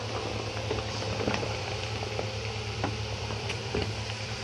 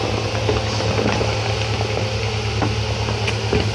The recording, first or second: second